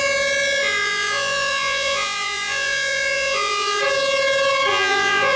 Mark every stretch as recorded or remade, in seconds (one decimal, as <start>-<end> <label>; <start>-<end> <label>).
0.0-0.6 recorded; 0.6-3.8 remade; 3.8-4.7 recorded; 4.7-5.4 remade